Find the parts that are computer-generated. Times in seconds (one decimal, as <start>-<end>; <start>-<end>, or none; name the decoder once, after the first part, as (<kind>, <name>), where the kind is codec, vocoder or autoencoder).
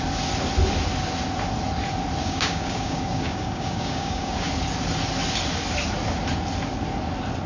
2.2-4.5 (codec, DAC)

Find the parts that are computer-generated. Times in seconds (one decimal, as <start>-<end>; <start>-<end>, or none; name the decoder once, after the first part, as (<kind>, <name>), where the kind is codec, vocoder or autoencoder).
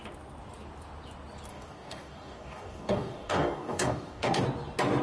1.5-4.4 (codec, DAC)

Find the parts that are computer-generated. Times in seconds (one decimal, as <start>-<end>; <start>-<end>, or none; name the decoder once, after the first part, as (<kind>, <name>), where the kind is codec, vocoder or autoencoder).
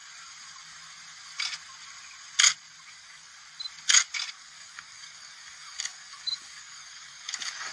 2.9-3.3 (codec, DAC); 4.3-7.7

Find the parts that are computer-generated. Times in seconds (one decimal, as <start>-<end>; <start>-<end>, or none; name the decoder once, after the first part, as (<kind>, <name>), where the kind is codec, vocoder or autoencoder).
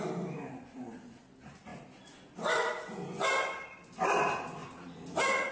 none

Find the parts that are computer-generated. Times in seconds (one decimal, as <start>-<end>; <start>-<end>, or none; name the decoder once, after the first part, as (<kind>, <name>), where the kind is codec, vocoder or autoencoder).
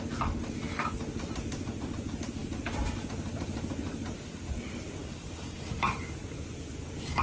5.0-5.7 (codec, DAC)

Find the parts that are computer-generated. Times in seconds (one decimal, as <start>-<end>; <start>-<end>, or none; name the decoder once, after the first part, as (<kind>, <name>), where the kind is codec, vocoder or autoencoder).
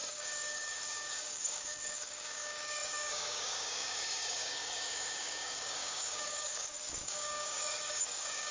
0.0-8.5 (codec, DAC)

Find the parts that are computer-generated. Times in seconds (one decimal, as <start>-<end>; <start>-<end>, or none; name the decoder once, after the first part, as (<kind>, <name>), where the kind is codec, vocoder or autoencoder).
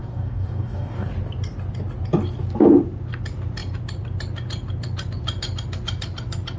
0.0-1.1 (codec, DAC)